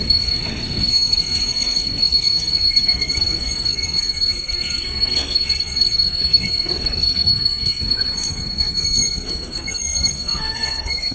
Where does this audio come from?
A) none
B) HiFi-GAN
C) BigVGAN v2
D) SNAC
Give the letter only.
D